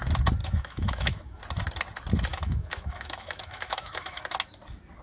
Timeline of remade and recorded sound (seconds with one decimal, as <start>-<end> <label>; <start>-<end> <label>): 0.0-0.4 recorded; 0.4-1.4 remade; 1.4-2.3 recorded; 2.3-4.2 remade; 4.2-5.0 recorded